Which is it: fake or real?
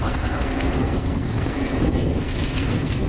fake